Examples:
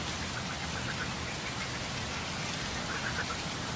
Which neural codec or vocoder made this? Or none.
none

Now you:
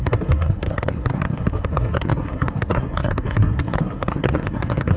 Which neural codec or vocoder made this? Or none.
codec, SNAC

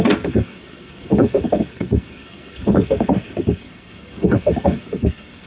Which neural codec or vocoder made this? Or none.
codec, SNAC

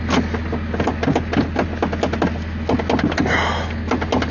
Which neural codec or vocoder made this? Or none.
none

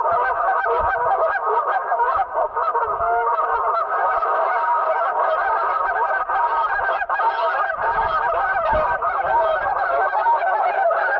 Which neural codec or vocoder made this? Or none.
none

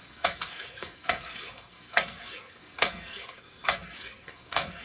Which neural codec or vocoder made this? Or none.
codec, SNAC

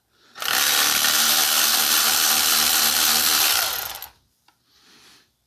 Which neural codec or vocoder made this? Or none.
none